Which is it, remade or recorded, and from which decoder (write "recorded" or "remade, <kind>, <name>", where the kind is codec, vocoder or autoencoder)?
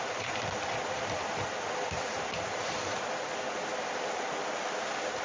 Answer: recorded